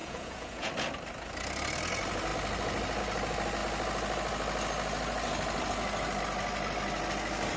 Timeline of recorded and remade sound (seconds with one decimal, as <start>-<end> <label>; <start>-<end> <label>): 0.0-0.7 remade; 0.7-7.6 recorded